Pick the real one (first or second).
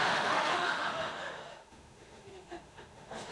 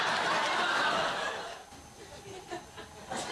second